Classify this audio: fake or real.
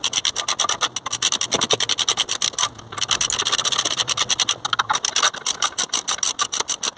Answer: real